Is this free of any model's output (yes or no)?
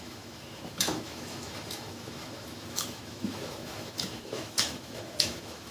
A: no